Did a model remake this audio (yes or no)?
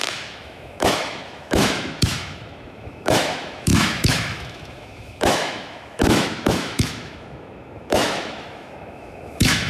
yes